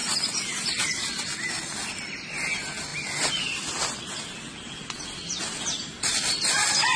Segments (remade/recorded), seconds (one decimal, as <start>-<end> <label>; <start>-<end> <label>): 0.0-7.0 recorded